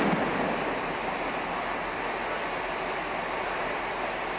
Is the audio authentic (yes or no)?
yes